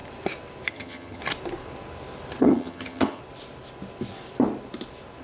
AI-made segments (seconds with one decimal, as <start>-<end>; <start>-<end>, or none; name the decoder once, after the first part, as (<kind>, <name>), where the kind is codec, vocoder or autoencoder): 0.7-1.2 (vocoder, HiFi-GAN); 2.4-3.2